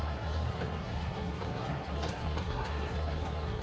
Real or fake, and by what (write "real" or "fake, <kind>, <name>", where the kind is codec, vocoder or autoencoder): fake, codec, SNAC